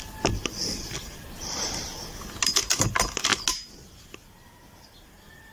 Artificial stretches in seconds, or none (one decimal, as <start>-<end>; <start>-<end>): none

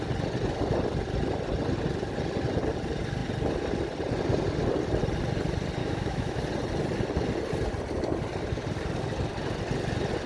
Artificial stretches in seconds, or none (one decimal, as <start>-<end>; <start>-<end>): 5.8-6.4

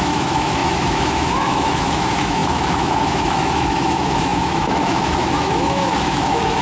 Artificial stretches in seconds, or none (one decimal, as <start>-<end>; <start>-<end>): 0.0-6.6

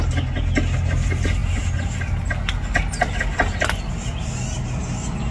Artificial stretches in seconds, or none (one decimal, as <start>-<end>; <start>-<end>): none

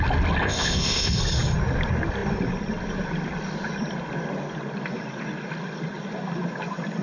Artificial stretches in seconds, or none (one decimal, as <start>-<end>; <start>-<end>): 0.4-1.2